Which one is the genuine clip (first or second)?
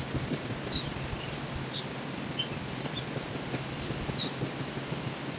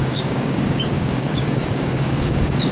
first